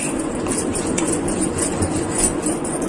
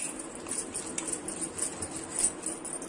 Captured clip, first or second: second